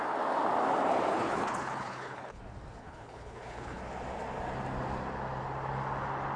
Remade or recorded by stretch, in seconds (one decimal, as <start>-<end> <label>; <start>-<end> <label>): 0.0-1.1 recorded; 1.1-2.4 remade; 2.4-2.8 recorded; 2.8-3.8 remade; 3.8-6.4 recorded